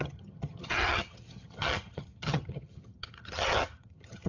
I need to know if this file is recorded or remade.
remade